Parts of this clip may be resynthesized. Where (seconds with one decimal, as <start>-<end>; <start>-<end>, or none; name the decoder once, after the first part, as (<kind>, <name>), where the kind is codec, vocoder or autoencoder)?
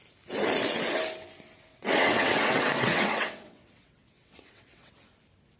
1.7-4.9 (vocoder, WaveNeXt)